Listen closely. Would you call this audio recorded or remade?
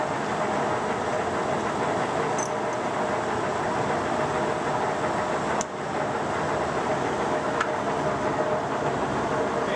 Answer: recorded